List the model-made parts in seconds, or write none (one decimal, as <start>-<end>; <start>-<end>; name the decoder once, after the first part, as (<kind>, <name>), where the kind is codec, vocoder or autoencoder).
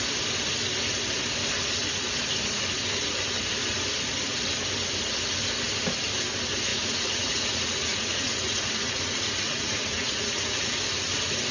6.7-10.7 (vocoder, Vocos)